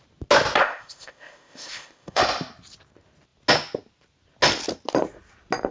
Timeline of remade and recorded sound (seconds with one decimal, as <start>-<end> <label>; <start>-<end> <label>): 0.0-0.6 recorded; 0.6-2.2 remade; 2.2-5.7 recorded